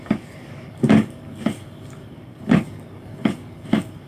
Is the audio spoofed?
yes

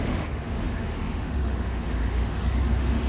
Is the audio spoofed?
yes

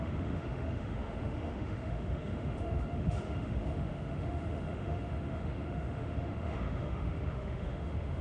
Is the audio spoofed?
yes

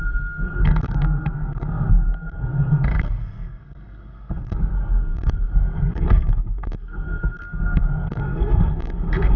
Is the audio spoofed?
yes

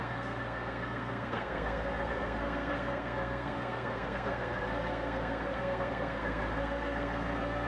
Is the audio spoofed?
yes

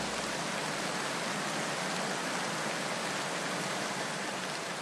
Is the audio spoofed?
no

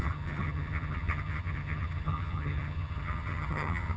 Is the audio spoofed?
yes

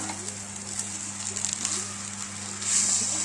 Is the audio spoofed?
no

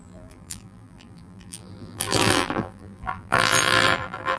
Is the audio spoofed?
yes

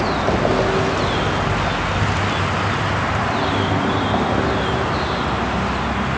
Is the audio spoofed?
no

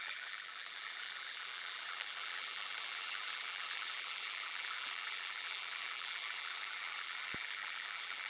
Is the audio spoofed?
yes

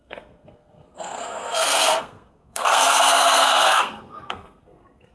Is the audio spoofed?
yes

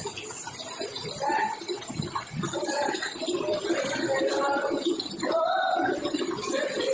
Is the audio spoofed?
yes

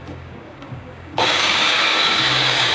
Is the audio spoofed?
yes